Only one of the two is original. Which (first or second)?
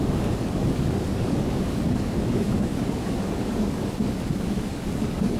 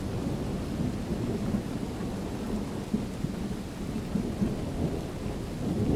second